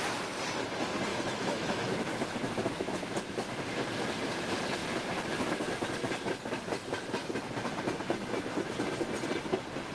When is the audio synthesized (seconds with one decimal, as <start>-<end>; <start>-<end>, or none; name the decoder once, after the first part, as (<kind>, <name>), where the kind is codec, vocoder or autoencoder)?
1.1-3.6 (autoencoder, DAC-VAE)